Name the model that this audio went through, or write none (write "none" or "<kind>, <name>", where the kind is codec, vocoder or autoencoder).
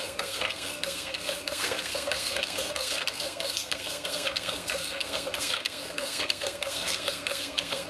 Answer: codec, SNAC